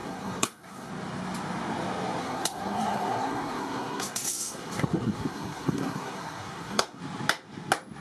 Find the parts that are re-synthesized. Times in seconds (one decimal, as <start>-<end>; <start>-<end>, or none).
0.0-0.9; 2.2-7.0